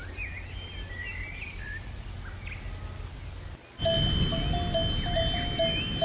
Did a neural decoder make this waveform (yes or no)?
no